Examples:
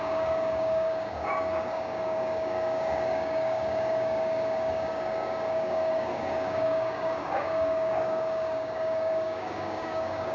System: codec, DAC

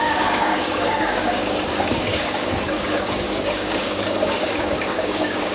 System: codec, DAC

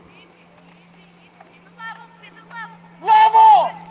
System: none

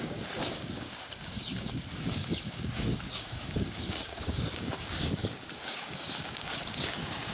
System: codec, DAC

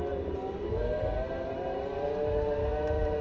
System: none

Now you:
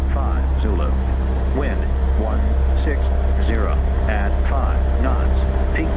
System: none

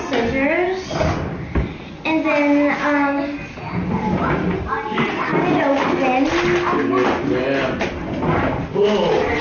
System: none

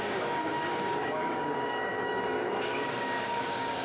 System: codec, DAC